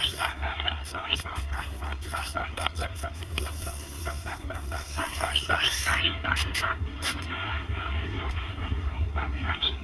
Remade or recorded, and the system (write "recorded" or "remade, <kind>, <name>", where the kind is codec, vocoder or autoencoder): remade, codec, SNAC